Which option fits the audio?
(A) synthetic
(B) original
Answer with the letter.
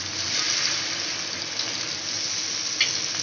B